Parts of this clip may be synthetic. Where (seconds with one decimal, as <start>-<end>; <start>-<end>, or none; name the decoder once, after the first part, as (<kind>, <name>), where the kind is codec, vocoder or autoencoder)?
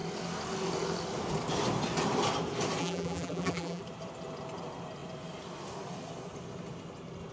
2.8-3.8 (vocoder, BigVGAN v2)